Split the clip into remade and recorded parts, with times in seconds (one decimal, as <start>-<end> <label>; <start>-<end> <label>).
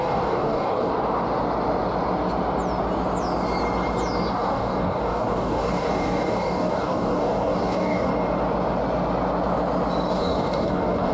0.0-0.9 remade; 0.9-4.3 recorded; 4.3-8.1 remade; 8.1-10.1 recorded; 10.1-11.1 remade